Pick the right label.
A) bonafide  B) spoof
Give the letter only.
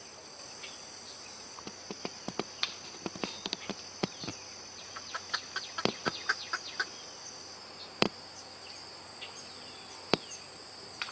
A